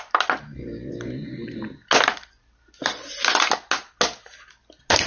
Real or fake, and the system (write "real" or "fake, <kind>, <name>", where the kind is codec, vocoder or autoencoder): real